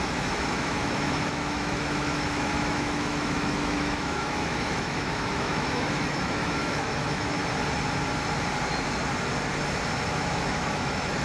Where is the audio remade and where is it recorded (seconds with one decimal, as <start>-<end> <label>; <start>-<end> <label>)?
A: 0.0-7.4 remade; 7.4-10.1 recorded; 10.1-11.2 remade